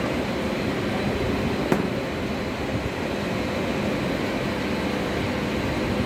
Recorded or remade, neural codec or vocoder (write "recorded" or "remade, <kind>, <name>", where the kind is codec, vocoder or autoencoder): recorded